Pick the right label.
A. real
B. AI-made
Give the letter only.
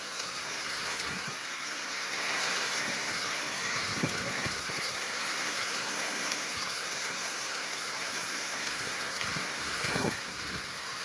B